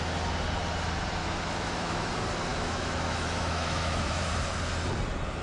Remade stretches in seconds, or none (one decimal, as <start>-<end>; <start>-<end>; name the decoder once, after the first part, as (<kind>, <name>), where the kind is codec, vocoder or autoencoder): 1.2-2.1 (autoencoder, DAC-VAE); 2.5-4.3